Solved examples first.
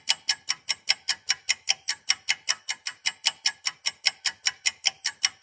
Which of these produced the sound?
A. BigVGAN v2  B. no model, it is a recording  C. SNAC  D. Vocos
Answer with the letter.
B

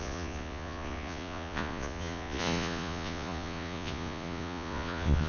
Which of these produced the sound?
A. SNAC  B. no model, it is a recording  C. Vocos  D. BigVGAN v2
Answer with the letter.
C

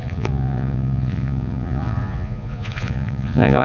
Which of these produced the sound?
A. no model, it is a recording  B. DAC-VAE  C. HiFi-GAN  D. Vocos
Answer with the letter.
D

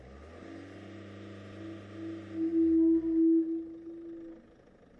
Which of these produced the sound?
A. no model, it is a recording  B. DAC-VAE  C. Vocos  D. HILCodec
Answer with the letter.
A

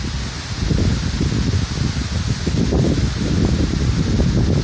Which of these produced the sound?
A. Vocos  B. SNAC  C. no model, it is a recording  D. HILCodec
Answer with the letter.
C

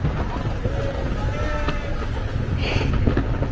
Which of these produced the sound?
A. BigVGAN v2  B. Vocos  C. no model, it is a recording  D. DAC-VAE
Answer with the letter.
C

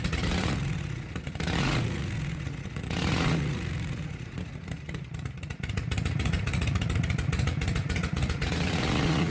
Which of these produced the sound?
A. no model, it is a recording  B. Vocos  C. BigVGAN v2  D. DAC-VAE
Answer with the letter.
B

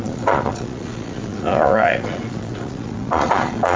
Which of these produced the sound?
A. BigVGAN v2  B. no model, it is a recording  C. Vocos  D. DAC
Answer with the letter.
C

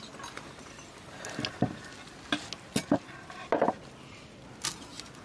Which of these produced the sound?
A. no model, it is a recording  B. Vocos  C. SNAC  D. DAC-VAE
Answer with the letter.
A